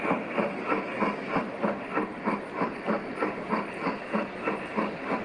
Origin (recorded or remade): recorded